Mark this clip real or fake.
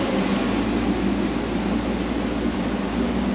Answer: real